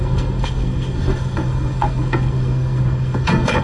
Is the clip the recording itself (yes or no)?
no